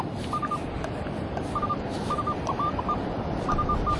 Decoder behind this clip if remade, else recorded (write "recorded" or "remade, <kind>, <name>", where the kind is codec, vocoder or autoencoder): remade, vocoder, BigVGAN v2